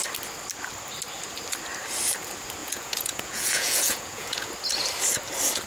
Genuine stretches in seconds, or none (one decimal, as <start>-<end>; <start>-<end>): 0.0-2.6; 4.5-5.7